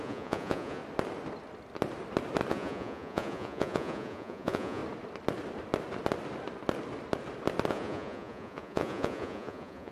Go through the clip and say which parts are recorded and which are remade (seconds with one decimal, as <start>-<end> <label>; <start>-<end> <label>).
0.0-0.8 remade; 0.8-2.5 recorded; 2.5-4.8 remade; 4.8-7.7 recorded; 7.7-9.9 remade